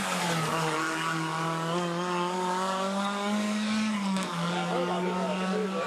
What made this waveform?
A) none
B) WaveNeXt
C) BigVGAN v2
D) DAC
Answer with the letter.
D